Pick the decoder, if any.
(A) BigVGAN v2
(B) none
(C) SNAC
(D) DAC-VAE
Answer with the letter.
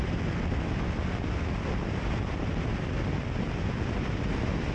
B